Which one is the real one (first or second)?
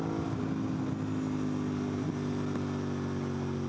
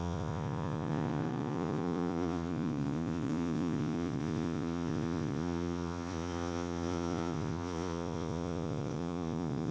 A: first